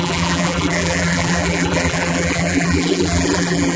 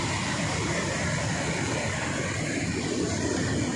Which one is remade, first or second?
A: first